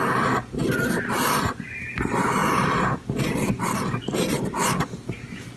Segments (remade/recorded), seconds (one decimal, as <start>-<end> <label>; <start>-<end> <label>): 0.0-5.6 recorded